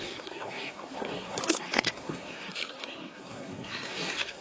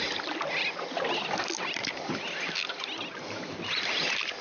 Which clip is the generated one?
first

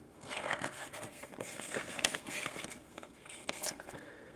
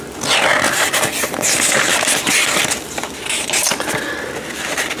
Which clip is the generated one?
first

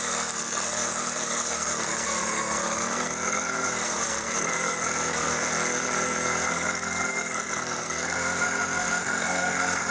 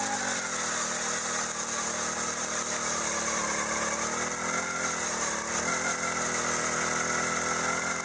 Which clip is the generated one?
first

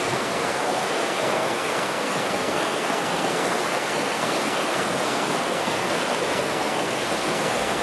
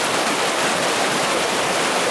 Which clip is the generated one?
first